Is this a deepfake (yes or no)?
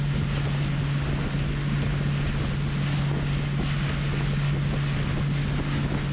no